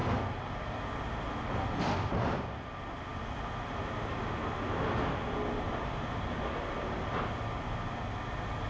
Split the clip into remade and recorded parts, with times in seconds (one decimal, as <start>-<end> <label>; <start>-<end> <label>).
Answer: 0.0-8.7 recorded